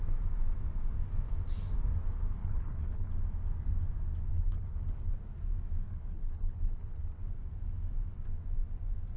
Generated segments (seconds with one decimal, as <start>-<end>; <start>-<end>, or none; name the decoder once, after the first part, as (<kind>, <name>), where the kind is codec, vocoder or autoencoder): 2.4-3.1 (codec, HILCodec); 4.3-5.1; 5.9-7.2

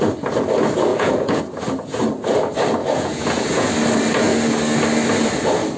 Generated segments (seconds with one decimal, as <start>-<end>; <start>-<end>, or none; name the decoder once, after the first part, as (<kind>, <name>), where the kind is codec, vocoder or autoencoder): 0.9-1.4 (vocoder, Vocos); 2.8-3.7

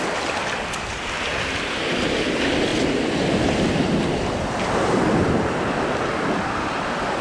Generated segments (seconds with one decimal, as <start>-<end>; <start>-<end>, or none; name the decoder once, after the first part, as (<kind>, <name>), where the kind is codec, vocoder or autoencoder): none